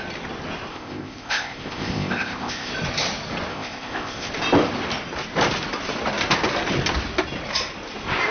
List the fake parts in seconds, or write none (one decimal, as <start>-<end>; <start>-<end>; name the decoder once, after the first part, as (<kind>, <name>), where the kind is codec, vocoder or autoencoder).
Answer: 0.7-2.7 (codec, ZipCodec); 3.5-4.3